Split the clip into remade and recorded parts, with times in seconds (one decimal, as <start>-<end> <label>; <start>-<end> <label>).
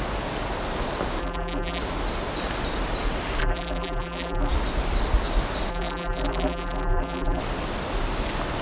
0.0-1.2 recorded; 1.2-1.8 remade; 1.8-3.4 recorded; 3.4-4.5 remade; 4.5-5.7 recorded; 5.7-7.4 remade; 7.4-8.6 recorded